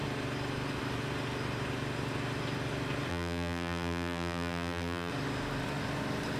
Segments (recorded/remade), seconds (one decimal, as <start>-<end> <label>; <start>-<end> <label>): 0.0-3.1 recorded; 3.1-5.1 remade; 5.1-6.4 recorded